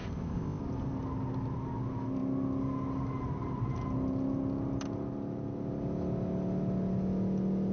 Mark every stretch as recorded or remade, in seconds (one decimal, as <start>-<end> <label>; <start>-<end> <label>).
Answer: 0.0-0.6 remade; 0.6-7.7 recorded